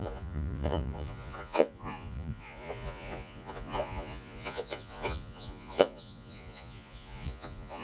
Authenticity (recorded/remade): remade